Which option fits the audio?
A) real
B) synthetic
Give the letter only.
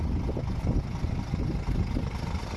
A